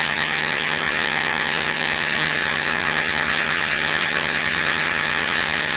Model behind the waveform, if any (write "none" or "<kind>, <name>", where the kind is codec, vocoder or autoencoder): vocoder, HiFi-GAN